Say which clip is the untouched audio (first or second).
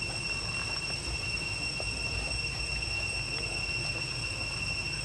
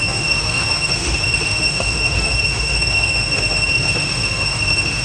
first